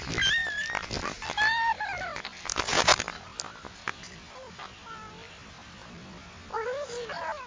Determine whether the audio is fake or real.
real